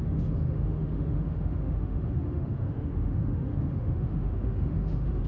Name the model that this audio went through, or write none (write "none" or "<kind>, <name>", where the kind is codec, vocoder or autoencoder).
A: autoencoder, DAC-VAE